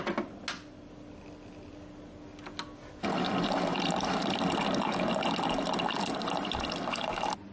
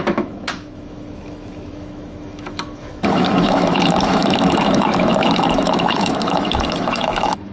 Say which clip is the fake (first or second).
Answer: second